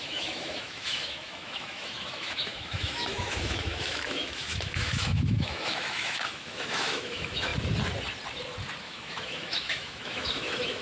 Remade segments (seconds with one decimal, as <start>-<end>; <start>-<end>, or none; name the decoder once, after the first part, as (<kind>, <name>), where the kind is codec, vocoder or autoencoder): 0.0-7.5 (autoencoder, DAC-VAE); 8.8-10.8

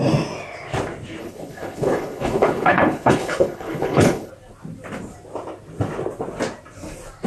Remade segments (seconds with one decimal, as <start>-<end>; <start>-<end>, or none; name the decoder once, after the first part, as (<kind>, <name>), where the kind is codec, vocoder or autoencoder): 1.2-4.3 (codec, HILCodec)

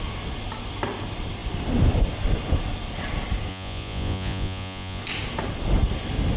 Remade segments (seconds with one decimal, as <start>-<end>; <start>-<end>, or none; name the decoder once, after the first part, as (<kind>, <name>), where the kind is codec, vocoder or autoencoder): 3.5-5.0 (vocoder, Vocos)

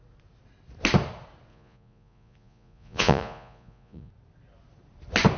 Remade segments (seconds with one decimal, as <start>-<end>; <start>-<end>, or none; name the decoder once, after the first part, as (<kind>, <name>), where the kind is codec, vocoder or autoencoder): 1.5-4.1 (vocoder, Vocos)

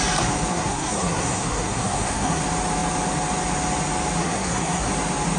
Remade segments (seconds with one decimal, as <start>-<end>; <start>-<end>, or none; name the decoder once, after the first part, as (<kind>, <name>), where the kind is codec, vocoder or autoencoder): 0.5-2.4 (codec, SNAC); 4.2-4.9

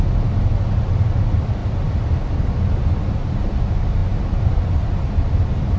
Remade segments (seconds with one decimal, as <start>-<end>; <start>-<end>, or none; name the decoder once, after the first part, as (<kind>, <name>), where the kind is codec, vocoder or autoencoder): none